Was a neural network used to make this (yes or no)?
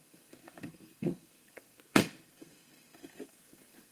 yes